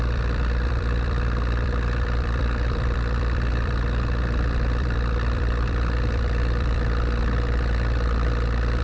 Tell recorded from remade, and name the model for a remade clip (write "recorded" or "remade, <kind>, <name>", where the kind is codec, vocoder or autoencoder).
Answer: remade, vocoder, BigVGAN v2